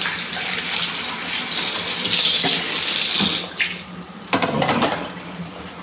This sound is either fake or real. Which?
real